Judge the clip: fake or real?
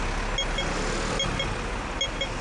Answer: real